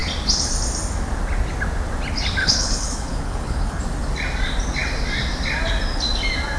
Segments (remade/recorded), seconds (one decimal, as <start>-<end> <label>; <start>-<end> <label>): 0.0-2.4 recorded; 2.4-3.8 remade; 3.8-6.6 recorded

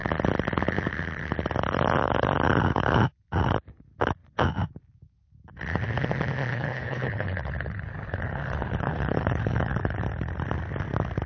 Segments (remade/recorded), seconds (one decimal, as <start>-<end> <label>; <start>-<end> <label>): 0.0-6.5 recorded; 6.5-10.0 remade; 10.0-11.3 recorded